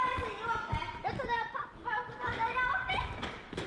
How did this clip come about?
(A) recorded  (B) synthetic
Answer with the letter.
A